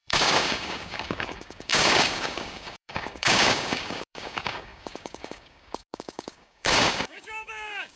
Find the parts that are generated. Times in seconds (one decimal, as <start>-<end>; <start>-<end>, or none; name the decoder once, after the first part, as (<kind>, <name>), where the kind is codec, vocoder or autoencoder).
0.0-8.0 (codec, DAC)